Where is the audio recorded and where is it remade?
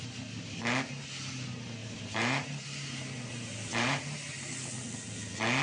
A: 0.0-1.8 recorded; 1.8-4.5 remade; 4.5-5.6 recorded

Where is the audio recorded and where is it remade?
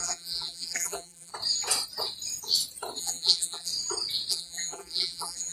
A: 0.0-1.3 remade; 1.3-3.0 recorded; 3.0-3.7 remade; 3.7-4.3 recorded; 4.3-5.5 remade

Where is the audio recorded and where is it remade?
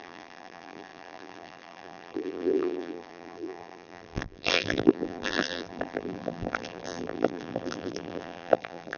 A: 0.0-9.0 remade